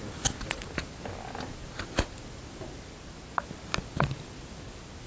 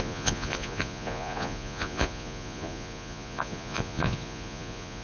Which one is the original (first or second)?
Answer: first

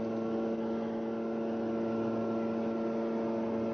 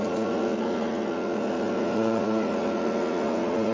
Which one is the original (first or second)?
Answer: first